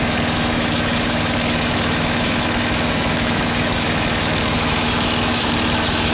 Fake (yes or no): yes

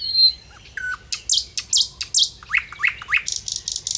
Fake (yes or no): no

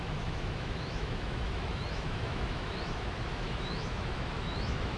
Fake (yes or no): yes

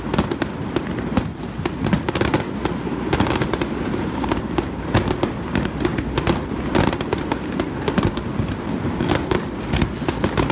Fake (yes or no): no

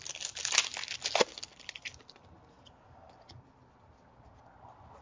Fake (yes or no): no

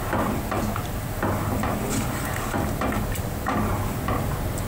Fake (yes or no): no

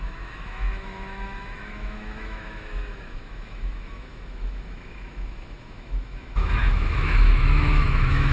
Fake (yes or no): yes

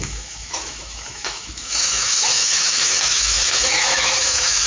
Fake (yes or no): yes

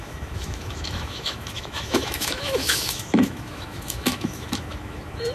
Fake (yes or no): yes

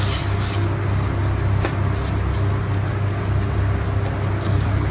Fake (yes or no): no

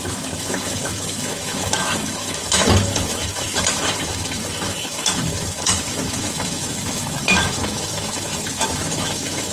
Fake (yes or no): yes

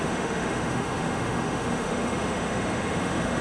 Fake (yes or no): yes